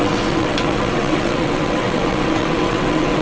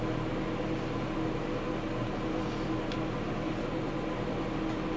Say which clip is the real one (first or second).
second